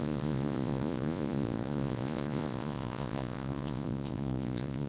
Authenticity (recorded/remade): remade